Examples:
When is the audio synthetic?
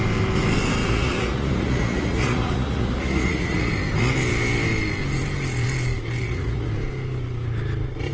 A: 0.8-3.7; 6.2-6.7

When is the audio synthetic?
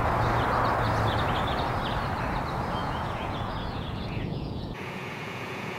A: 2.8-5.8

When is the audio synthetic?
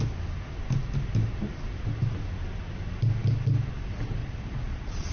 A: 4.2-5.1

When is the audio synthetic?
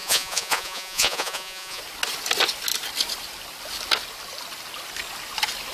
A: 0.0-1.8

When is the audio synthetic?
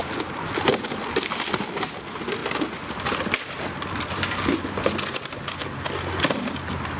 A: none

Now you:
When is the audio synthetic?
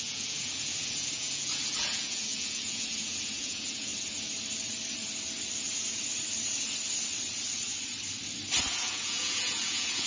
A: 0.0-3.9; 8.6-10.1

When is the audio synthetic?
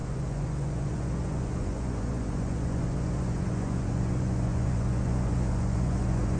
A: 0.0-6.4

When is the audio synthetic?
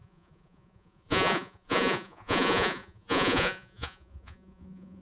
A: 0.0-5.0